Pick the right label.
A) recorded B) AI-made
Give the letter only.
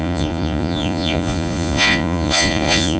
B